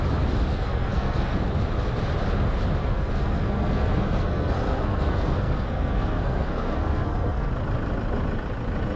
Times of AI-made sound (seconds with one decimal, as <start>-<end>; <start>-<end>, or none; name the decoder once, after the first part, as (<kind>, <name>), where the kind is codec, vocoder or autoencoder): 0.5-1.4 (codec, SNAC); 2.8-7.5

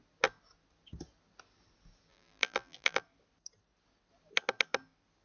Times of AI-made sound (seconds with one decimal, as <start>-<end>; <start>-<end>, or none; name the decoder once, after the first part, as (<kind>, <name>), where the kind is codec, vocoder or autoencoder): 2.1-3.0 (vocoder, BigVGAN v2)

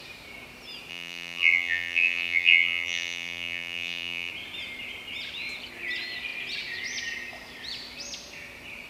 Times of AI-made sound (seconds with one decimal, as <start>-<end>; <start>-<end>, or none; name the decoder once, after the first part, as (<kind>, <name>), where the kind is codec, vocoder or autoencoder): 0.9-4.3 (vocoder, BigVGAN v2)

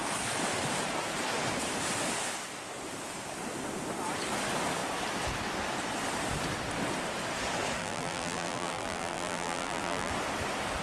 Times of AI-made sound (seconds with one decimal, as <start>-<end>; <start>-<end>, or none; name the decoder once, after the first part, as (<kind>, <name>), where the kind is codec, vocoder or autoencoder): 7.8-10.1 (vocoder, BigVGAN v2)